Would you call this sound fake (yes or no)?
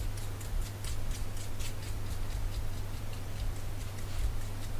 yes